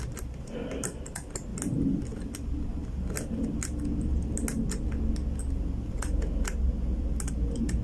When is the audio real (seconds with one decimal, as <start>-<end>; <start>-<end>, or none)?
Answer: 0.0-7.8